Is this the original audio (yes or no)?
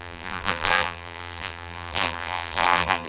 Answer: no